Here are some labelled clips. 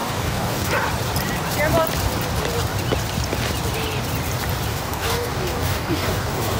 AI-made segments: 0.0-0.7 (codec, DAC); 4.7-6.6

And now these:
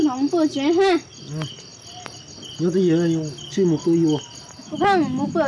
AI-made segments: none

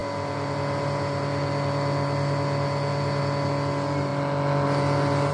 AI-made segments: none

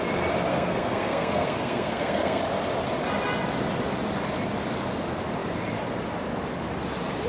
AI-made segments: 0.5-2.4 (codec, SNAC)

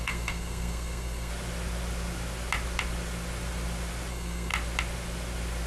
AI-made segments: 0.0-1.3 (codec, SNAC); 4.1-4.5

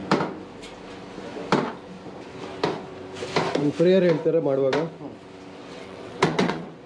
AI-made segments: 5.6-6.9 (vocoder, WaveNeXt)

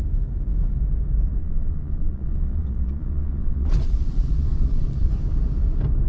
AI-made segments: 1.4-5.1 (vocoder, Vocos)